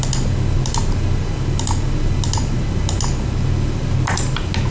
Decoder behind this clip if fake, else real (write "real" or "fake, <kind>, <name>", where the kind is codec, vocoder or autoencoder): real